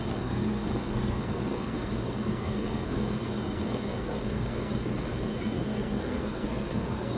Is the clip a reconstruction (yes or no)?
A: yes